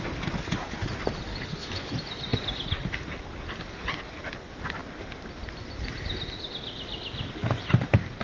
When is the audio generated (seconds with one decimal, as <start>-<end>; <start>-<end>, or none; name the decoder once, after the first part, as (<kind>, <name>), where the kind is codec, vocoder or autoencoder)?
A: 1.3-1.9 (codec, HILCodec)